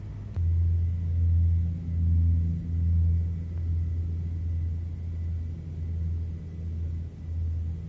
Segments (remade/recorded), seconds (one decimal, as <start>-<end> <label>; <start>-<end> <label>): 0.0-7.9 recorded